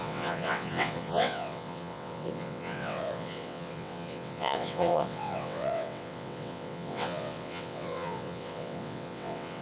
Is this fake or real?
fake